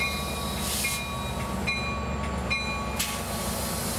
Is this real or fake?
real